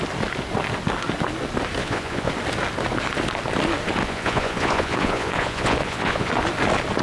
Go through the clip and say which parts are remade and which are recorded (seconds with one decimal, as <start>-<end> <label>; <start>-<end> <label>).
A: 0.0-1.8 recorded; 1.8-2.3 remade; 2.3-4.0 recorded; 4.0-6.3 remade; 6.3-7.0 recorded